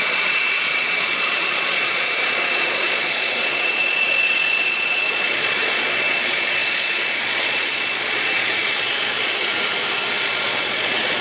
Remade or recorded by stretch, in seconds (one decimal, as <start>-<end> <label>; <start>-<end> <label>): 0.0-9.5 remade; 9.5-10.1 recorded; 10.1-11.2 remade